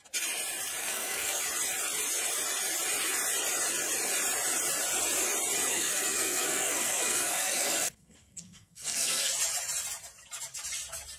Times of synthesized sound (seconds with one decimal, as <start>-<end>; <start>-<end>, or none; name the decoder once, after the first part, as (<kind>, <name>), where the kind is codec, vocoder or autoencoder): 0.8-1.4 (codec, SNAC); 5.7-9.3